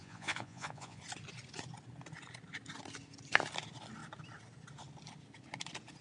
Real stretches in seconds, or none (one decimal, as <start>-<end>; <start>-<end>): 1.0-6.0